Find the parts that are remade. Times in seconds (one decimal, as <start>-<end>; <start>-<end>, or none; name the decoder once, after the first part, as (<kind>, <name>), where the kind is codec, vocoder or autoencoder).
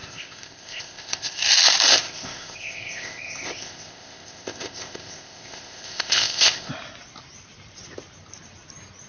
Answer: 0.0-1.4 (codec, ZipCodec); 1.9-6.7